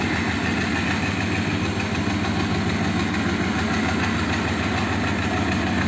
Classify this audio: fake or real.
real